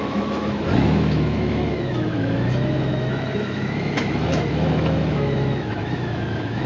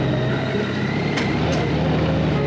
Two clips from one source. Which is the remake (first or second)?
first